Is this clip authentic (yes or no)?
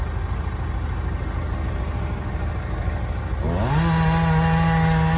yes